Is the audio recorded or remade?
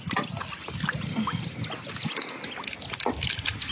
recorded